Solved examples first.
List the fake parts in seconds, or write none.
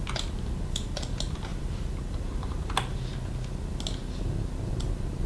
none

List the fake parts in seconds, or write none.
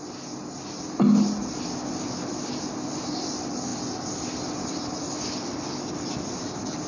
1.4-2.3 (vocoder, BigVGAN v2)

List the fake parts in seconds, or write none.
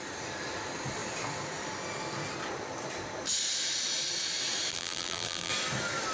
4.7-5.5 (vocoder, BigVGAN v2)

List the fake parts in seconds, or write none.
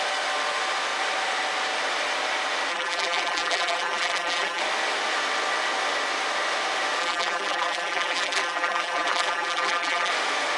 2.7-4.6 (vocoder, BigVGAN v2); 7.0-10.1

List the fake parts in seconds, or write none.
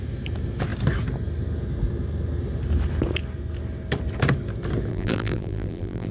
4.9-6.1 (vocoder, BigVGAN v2)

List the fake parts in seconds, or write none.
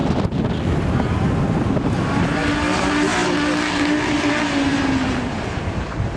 none